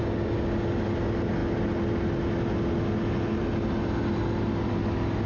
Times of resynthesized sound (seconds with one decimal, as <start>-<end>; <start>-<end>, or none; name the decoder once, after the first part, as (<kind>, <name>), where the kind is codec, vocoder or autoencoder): none